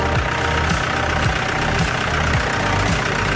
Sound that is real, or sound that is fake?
real